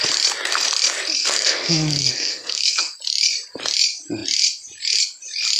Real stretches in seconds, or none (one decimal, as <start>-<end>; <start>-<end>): 0.0-1.2; 3.0-5.6